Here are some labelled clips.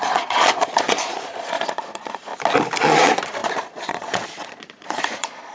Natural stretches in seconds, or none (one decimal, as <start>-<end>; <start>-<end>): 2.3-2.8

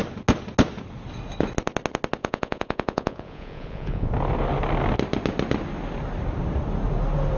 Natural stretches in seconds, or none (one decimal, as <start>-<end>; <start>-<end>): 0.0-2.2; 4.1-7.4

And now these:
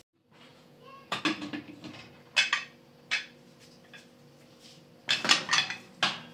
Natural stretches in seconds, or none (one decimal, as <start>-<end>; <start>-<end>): 0.0-0.5; 1.2-6.3